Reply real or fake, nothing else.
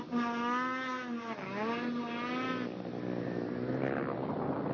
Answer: real